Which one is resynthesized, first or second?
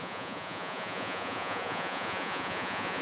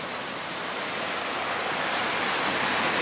first